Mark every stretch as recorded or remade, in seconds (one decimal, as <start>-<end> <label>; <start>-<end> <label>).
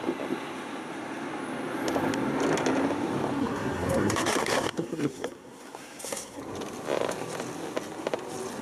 0.0-3.4 recorded; 3.4-6.4 remade; 6.4-8.6 recorded